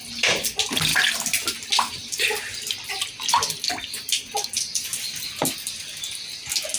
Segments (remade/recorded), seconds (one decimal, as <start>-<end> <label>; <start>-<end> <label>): 0.0-6.8 recorded